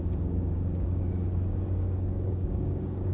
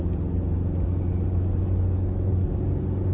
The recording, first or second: second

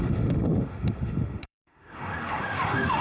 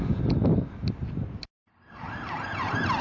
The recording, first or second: second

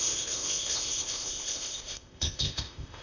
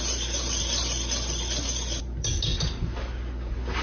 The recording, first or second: second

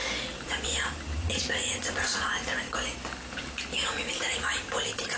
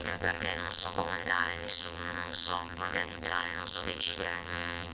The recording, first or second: first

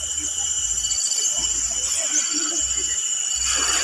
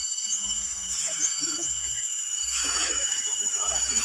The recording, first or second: first